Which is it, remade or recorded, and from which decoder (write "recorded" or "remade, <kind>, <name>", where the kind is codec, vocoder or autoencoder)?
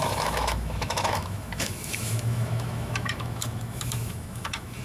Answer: remade, autoencoder, DAC-VAE